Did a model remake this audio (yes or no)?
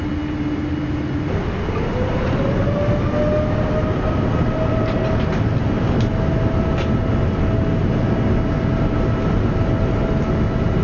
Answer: no